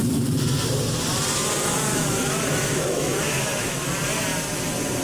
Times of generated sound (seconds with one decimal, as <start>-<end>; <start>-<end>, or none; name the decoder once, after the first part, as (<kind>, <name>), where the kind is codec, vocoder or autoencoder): 1.9-3.9 (autoencoder, DAC-VAE)